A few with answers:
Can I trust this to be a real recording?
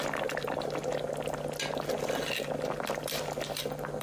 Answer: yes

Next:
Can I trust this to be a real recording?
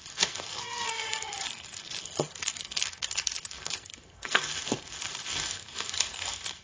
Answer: no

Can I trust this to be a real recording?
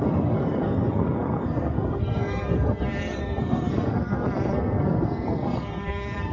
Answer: no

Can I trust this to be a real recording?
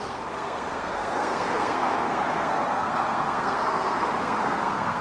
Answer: no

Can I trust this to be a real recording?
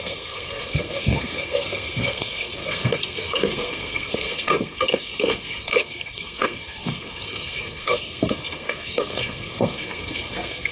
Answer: no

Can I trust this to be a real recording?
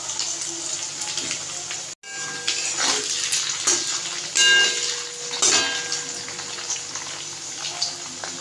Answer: yes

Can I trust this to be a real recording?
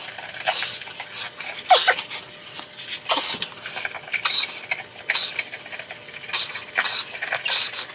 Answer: yes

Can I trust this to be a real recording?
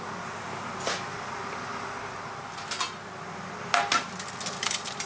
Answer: yes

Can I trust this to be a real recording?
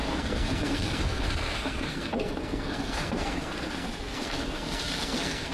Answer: no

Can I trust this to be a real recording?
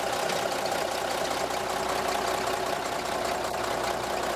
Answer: yes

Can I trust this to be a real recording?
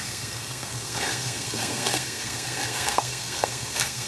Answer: no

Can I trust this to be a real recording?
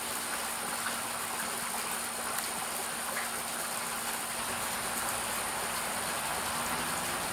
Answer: yes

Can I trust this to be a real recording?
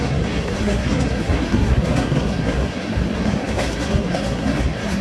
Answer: no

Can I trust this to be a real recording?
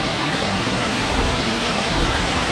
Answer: no